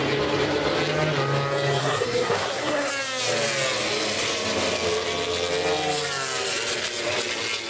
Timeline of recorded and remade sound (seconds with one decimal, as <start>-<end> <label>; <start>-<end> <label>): 0.0-1.8 recorded; 1.8-2.9 remade; 2.9-7.7 recorded

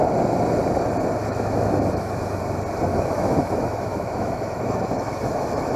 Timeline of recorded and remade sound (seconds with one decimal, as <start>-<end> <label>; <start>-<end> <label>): 0.0-1.2 recorded; 1.2-2.4 remade; 2.4-2.9 recorded; 2.9-5.8 remade

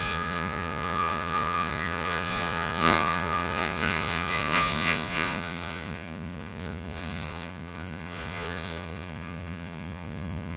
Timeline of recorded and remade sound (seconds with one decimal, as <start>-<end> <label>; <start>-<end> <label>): 0.0-10.6 remade

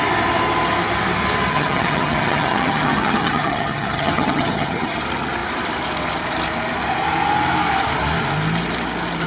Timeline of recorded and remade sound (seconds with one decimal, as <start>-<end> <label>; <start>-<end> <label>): 0.0-1.5 recorded; 1.5-5.0 remade; 5.0-9.3 recorded

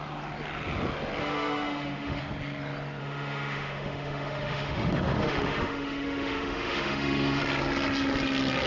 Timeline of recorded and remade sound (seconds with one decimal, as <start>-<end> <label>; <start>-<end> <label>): 0.0-1.2 recorded; 1.2-2.2 remade; 2.2-3.0 recorded; 3.0-7.4 remade; 7.4-8.7 recorded

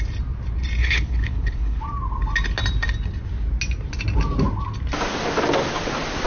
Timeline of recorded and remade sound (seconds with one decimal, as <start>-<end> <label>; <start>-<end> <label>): 0.0-0.8 recorded; 0.8-1.8 remade; 1.8-6.3 recorded

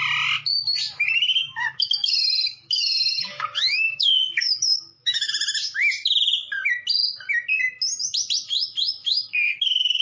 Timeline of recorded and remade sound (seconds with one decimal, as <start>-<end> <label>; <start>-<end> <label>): 0.0-1.4 recorded; 1.4-5.3 remade; 5.3-9.0 recorded; 9.0-10.0 remade